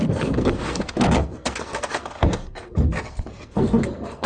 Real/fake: fake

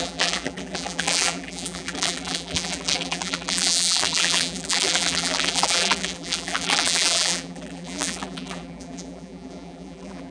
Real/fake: fake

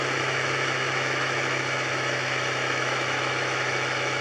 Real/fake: fake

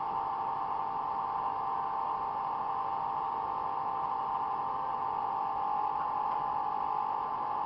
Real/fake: real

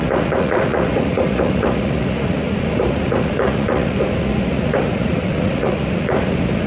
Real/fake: fake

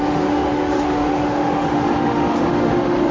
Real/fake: fake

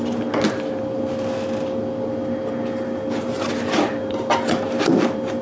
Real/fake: real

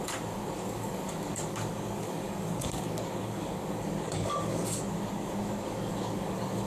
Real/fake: fake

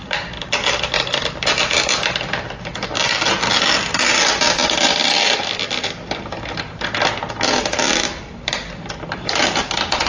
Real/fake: fake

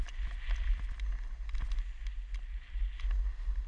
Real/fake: real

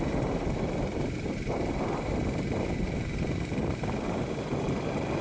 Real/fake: fake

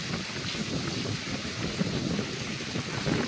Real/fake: real